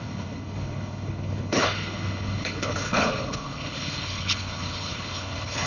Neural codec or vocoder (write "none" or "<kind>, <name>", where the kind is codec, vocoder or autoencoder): codec, HILCodec